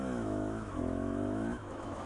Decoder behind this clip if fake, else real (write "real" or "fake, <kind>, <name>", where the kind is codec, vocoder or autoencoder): fake, autoencoder, DAC-VAE